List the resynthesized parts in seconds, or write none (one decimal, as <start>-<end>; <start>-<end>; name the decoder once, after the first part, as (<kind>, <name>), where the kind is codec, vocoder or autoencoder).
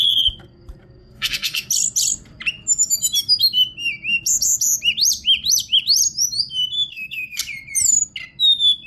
1.0-1.7 (codec, SNAC); 6.9-7.4